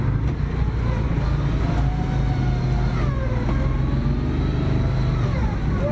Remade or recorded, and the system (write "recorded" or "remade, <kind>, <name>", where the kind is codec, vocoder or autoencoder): recorded